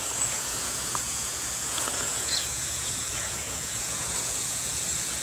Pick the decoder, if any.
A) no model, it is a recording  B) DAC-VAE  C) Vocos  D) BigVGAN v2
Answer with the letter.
C